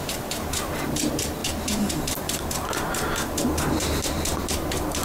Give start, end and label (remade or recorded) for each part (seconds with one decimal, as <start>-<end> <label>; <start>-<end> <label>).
0.0-1.4 remade; 1.4-1.9 recorded; 1.9-5.0 remade